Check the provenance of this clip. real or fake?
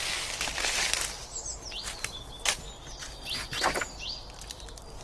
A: real